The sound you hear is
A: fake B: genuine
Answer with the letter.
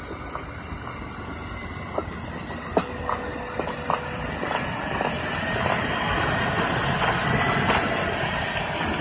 B